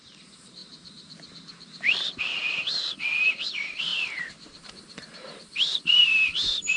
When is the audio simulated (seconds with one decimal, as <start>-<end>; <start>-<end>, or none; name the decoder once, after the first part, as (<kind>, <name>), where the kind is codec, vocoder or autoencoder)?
0.0-0.6 (vocoder, BigVGAN v2); 3.2-6.8